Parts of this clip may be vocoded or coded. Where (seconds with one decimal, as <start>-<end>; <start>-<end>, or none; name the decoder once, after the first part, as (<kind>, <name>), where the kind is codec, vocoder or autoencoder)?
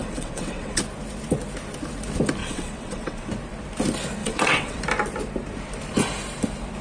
0.0-0.8 (vocoder, WaveNeXt); 2.4-3.3; 4.2-4.8